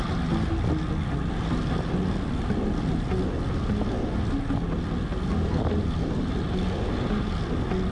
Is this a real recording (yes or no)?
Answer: yes